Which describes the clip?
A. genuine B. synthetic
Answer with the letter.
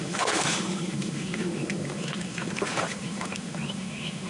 B